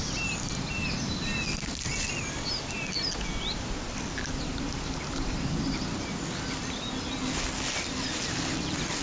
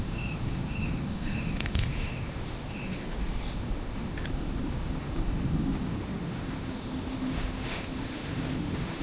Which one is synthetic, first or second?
second